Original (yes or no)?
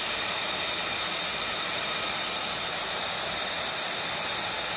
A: yes